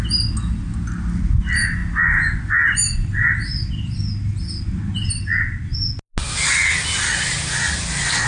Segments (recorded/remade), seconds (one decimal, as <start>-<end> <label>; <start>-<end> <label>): 0.0-8.3 recorded